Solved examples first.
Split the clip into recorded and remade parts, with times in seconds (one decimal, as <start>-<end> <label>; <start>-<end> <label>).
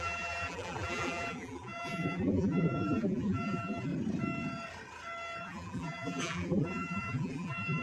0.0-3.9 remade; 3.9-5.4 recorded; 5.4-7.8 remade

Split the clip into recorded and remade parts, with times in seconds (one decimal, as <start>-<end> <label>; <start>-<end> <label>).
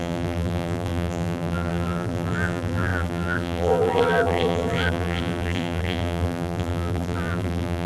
0.0-7.9 remade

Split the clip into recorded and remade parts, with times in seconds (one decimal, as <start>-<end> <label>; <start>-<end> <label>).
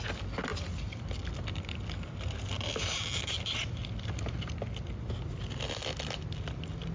0.0-0.5 recorded; 0.5-4.1 remade; 4.1-6.9 recorded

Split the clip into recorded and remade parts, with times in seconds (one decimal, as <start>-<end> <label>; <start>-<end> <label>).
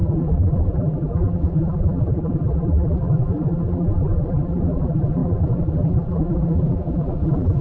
0.0-7.6 remade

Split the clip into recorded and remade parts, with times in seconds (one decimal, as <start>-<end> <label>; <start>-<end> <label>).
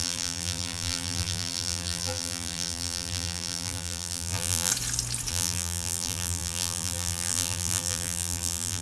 0.0-4.7 remade; 4.7-5.3 recorded; 5.3-8.8 remade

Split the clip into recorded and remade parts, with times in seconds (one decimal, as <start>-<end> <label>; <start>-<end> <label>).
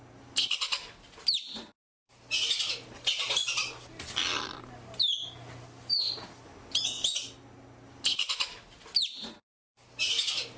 0.0-10.6 recorded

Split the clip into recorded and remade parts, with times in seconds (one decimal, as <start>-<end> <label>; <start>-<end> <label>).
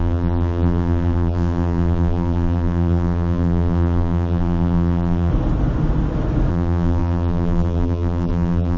0.0-5.3 remade; 5.3-6.5 recorded; 6.5-8.8 remade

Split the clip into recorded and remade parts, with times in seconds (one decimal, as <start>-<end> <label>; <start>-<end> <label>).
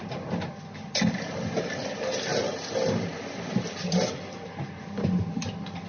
0.0-5.9 recorded